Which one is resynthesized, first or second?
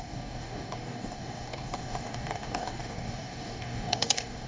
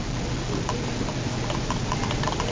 first